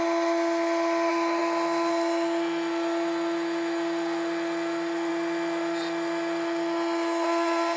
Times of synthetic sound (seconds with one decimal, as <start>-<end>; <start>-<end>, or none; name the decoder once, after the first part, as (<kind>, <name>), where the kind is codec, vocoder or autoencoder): none